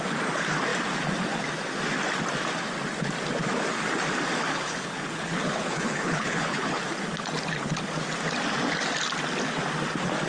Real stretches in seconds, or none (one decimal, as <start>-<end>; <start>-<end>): 0.0-4.5; 6.8-10.3